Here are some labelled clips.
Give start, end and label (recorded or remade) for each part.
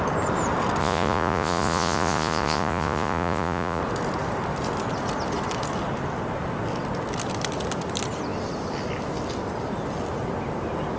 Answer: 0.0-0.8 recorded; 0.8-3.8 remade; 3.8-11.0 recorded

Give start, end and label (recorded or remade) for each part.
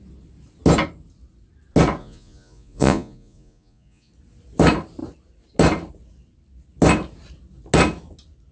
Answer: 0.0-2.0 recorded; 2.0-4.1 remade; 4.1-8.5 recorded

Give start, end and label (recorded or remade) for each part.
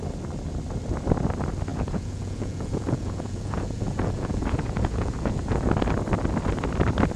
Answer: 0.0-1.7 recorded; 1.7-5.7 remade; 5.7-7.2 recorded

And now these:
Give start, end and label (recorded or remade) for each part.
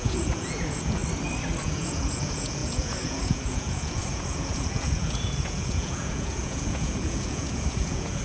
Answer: 0.0-1.0 remade; 1.0-1.6 recorded; 1.6-8.2 remade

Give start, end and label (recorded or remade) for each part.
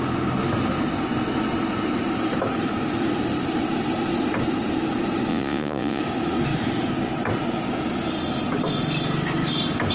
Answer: 0.0-5.3 recorded; 5.3-6.0 remade; 6.0-9.9 recorded